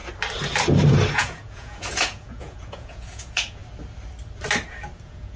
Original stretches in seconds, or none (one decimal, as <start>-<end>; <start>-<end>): 0.0-1.1; 3.6-5.0